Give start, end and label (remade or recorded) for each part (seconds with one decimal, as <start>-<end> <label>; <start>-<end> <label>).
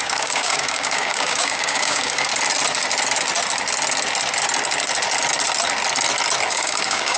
0.0-2.3 remade; 2.3-6.5 recorded; 6.5-7.2 remade